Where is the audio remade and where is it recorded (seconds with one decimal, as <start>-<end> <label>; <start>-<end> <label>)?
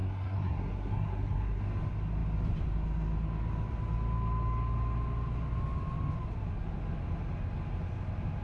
0.0-1.6 remade; 1.6-8.4 recorded